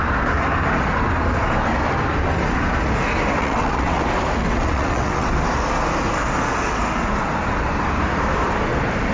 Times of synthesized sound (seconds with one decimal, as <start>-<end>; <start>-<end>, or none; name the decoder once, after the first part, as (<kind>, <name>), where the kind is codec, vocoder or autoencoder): 3.4-4.0 (vocoder, WaveNeXt); 4.4-5.3

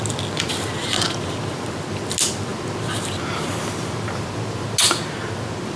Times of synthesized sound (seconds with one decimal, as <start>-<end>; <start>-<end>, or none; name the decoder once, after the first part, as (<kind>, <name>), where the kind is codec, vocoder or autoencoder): none

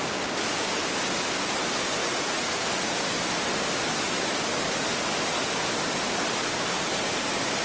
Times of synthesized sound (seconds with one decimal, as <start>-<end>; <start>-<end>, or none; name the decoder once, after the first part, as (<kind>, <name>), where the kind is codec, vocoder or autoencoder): 2.0-2.5 (vocoder, Vocos)

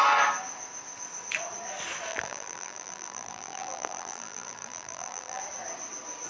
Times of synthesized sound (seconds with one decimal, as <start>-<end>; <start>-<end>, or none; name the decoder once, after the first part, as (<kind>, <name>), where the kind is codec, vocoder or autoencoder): 2.1-5.4 (vocoder, BigVGAN v2)

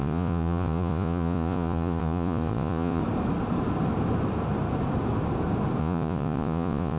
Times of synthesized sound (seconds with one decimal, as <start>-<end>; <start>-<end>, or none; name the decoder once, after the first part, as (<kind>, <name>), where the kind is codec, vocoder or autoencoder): 0.0-3.0 (vocoder, Vocos); 5.8-7.0